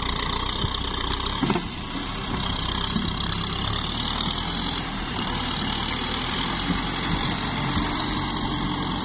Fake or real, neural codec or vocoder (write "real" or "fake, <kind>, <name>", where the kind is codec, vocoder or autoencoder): real